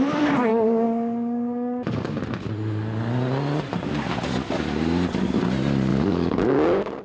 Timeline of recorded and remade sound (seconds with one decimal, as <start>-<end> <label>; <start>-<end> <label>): 0.0-0.5 recorded; 0.5-2.2 remade; 2.2-5.9 recorded; 5.9-7.0 remade